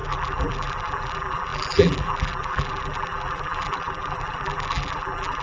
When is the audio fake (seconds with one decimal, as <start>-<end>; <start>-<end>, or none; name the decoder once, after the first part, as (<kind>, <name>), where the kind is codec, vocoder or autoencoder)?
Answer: 0.0-5.4 (vocoder, BigVGAN v2)